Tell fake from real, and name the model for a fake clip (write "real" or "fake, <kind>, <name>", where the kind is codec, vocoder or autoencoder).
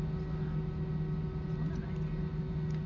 real